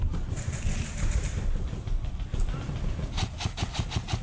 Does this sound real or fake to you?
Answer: real